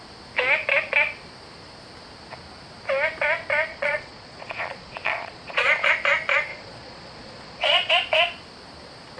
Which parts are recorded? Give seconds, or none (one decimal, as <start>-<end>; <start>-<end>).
0.0-3.7; 5.9-6.5; 7.9-9.2